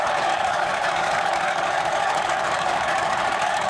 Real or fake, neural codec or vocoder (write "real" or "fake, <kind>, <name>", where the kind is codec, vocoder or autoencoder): fake, codec, DAC